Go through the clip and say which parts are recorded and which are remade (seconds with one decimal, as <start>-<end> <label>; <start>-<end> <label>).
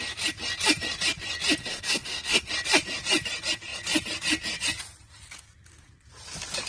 0.0-1.6 recorded; 1.6-2.5 remade; 2.5-6.7 recorded